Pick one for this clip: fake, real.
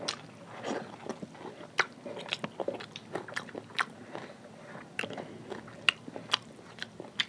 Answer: real